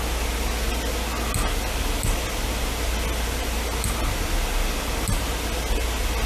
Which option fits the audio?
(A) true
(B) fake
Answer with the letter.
A